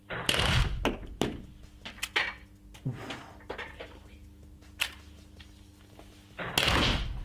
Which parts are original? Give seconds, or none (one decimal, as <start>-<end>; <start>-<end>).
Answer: 0.0-7.2